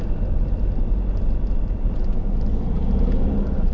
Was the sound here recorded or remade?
recorded